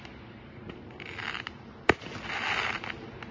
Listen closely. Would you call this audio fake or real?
real